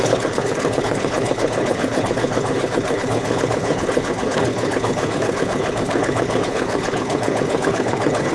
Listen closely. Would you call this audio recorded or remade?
remade